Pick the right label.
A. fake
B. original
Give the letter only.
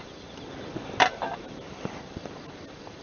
A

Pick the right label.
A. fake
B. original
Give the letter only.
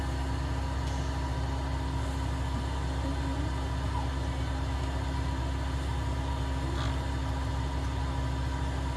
B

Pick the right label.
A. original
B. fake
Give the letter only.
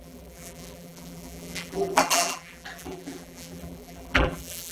B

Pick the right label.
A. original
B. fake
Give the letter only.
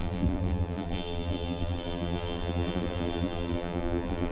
B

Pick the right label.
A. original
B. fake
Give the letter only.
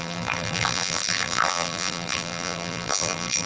B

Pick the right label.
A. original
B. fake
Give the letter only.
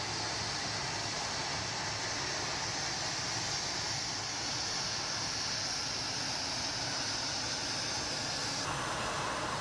A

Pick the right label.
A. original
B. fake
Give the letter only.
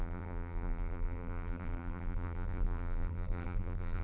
B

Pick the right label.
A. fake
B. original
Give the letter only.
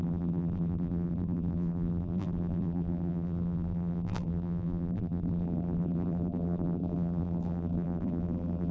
A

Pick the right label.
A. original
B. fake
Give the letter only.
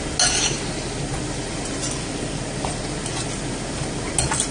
A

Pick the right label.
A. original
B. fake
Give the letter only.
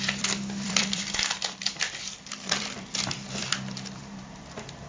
B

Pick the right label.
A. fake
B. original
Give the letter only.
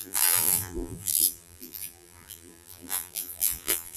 A